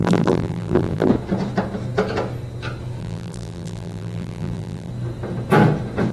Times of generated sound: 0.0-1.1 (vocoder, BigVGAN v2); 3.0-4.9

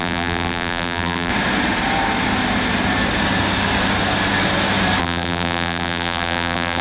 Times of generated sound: 0.0-1.3 (vocoder, BigVGAN v2); 5.0-6.8

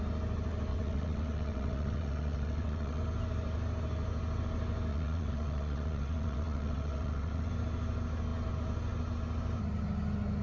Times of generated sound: 0.7-3.0 (vocoder, WaveNeXt); 4.9-7.5

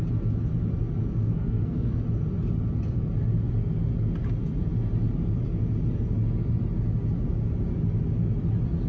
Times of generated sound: 1.1-2.0 (codec, SNAC)

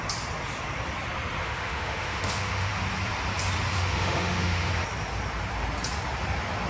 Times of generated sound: 1.4-2.7 (autoencoder, DAC-VAE); 3.7-4.7

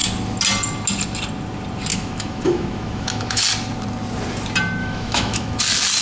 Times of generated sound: 1.9-3.4 (autoencoder, DAC-VAE); 4.8-5.6

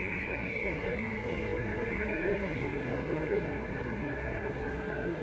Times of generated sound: 0.0-5.2 (codec, SNAC)